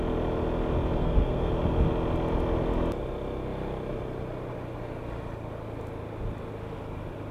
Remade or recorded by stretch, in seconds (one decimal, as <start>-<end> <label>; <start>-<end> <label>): 0.0-1.0 recorded; 1.0-1.5 remade; 1.5-7.3 recorded